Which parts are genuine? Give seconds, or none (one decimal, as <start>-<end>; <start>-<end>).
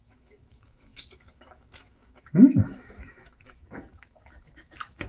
none